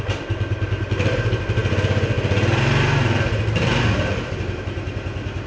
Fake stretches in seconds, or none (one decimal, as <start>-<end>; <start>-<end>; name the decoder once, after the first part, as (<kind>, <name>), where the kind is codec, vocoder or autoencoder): none